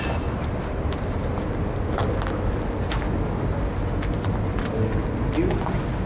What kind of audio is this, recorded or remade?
recorded